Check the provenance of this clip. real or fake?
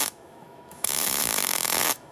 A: fake